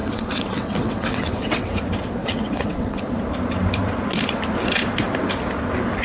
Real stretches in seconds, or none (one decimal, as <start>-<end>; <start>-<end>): 1.7-2.2; 3.0-6.0